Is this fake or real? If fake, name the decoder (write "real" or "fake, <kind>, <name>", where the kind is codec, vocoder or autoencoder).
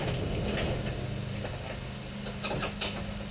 real